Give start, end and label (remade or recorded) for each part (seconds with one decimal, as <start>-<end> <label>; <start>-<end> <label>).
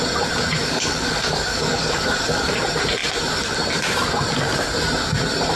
0.0-0.6 recorded; 0.6-2.5 remade; 2.5-5.6 recorded